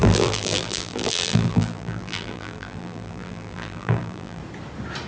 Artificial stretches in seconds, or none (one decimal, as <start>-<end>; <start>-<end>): 0.0-4.4